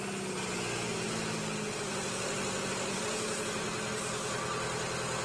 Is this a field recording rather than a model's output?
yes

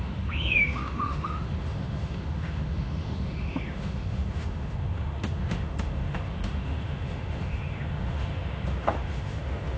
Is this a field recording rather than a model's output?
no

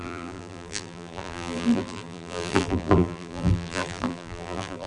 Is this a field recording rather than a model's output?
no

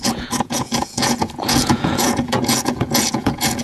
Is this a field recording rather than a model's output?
no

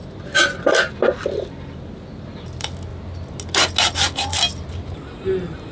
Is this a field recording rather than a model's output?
yes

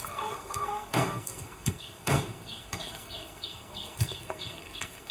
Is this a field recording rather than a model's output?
no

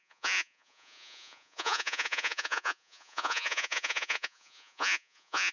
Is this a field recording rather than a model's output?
no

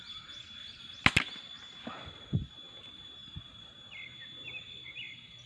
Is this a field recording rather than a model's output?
yes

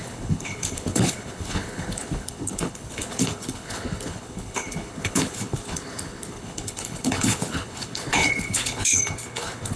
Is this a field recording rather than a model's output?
no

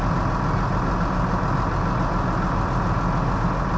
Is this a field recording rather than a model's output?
yes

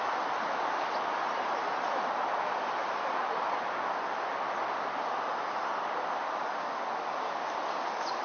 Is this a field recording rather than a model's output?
yes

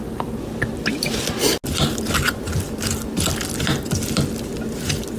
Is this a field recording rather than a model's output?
yes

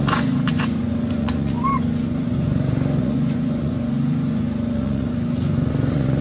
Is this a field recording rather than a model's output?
no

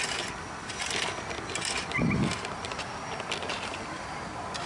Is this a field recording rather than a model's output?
yes